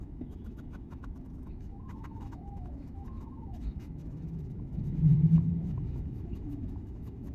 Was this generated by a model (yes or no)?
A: yes